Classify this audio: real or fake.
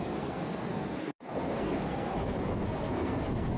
fake